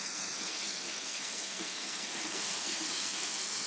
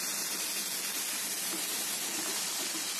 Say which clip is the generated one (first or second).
first